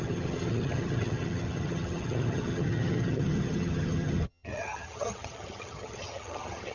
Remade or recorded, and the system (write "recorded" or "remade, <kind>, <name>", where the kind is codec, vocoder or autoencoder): remade, vocoder, HiFi-GAN